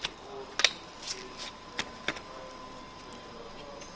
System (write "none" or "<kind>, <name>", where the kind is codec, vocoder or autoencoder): none